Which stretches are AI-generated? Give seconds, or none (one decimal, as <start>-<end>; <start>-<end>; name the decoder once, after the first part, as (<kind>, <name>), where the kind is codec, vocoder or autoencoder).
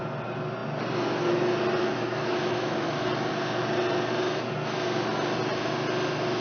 1.8-3.1 (autoencoder, DAC-VAE)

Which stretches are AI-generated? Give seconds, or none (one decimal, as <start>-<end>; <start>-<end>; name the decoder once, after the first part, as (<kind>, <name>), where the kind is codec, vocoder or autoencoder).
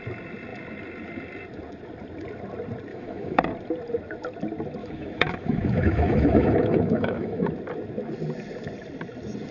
2.9-3.4 (autoencoder, DAC-VAE); 4.8-7.5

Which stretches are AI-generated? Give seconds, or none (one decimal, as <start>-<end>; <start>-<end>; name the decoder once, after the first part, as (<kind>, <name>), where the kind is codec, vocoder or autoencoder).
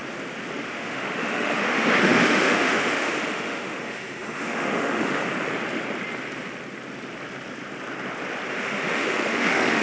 0.7-5.2 (autoencoder, DAC-VAE); 8.6-9.8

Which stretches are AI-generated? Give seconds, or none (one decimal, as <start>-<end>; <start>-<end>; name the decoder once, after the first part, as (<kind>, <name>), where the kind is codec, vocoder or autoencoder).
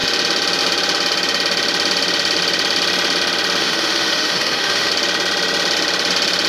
3.6-4.9 (autoencoder, DAC-VAE)